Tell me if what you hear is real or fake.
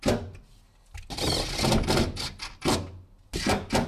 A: real